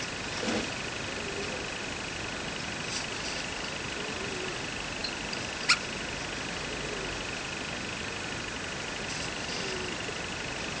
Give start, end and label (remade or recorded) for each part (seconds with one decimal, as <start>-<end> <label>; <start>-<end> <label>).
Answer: 0.0-10.8 recorded